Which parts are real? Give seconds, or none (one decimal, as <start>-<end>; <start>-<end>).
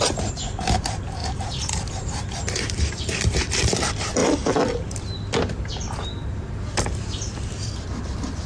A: 0.0-8.5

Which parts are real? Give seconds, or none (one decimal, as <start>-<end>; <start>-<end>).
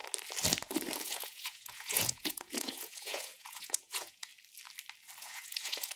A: 0.0-1.0; 4.3-5.2